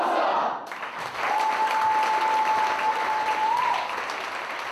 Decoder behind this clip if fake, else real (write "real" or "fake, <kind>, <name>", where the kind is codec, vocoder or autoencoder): real